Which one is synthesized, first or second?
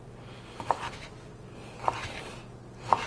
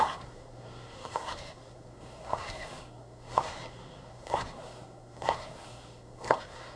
second